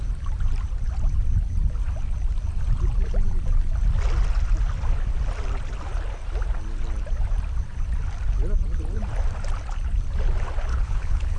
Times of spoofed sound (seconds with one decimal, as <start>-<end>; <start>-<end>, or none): 10.7-11.4